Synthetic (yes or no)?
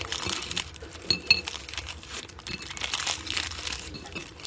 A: no